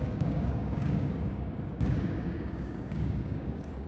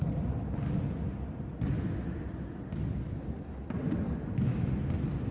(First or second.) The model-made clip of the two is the first